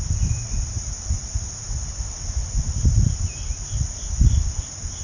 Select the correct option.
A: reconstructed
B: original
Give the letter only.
B